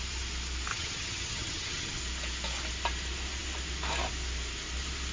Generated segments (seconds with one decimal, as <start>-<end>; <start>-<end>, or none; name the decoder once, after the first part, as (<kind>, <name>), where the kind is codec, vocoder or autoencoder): 0.7-2.0 (vocoder, HiFi-GAN)